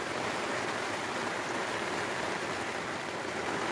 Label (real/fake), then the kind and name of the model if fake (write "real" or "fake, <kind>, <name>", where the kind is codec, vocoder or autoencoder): real